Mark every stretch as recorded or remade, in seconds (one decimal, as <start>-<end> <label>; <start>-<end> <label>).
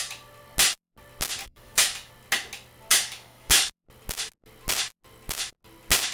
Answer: 0.0-1.4 recorded; 1.4-2.1 remade; 2.1-2.9 recorded; 2.9-3.7 remade; 3.7-6.1 recorded